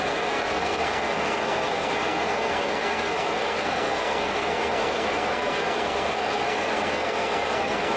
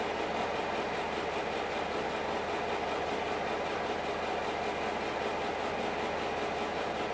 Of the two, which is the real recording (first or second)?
second